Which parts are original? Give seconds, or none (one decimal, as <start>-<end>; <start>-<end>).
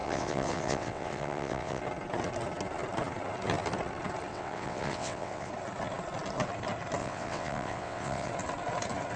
1.8-4.3; 5.5-7.0; 8.3-9.2